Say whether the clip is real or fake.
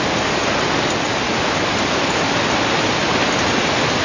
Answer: real